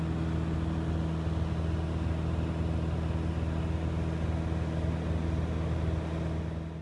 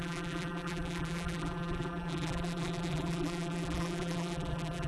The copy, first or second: second